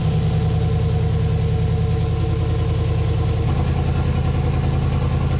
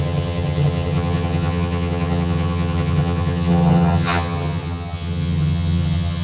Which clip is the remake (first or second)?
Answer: second